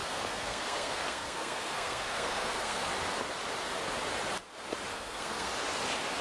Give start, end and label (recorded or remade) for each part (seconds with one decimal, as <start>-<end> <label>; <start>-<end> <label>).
0.0-2.9 remade; 2.9-4.9 recorded; 4.9-5.5 remade; 5.5-6.2 recorded